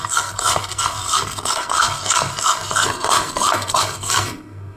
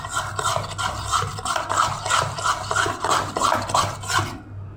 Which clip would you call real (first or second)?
second